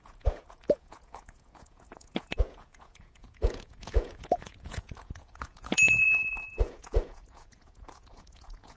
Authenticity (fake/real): fake